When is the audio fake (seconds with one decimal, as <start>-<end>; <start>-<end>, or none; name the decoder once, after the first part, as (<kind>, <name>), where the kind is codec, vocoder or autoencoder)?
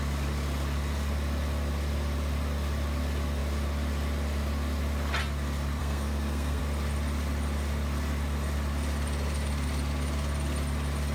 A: 5.8-6.6 (codec, SNAC)